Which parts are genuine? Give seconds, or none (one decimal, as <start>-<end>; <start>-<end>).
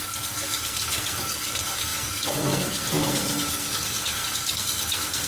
none